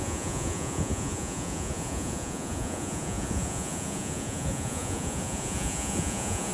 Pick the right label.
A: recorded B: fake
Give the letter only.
B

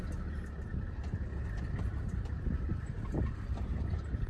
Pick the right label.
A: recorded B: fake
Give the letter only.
A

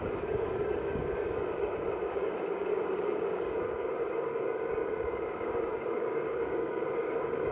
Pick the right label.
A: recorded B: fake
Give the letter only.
B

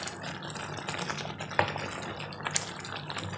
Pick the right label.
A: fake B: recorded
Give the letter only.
B